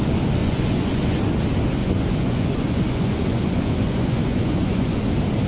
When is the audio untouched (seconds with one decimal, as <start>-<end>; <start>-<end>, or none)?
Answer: 0.0-0.4; 1.2-1.8; 5.0-5.5